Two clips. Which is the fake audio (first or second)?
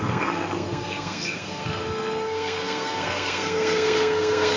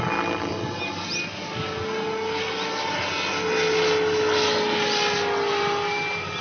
first